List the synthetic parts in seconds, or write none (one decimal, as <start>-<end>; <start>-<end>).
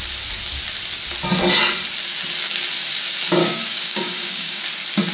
3.4-4.6